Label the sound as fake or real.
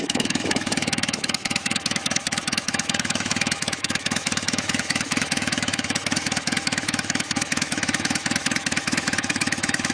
fake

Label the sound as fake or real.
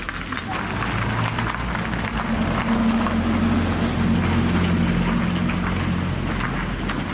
real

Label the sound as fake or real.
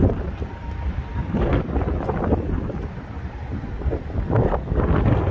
real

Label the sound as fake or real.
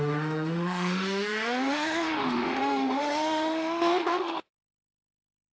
fake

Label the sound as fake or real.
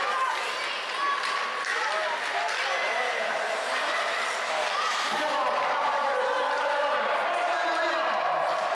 real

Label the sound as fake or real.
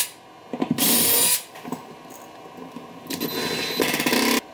real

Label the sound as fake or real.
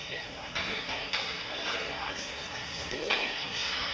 fake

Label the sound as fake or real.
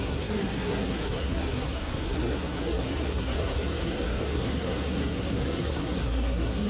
fake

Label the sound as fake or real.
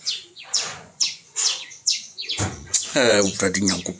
fake